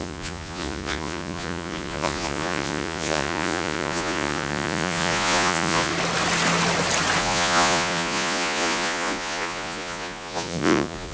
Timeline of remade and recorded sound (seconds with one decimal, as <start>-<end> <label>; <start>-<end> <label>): 0.0-5.9 remade; 5.9-7.2 recorded; 7.2-11.1 remade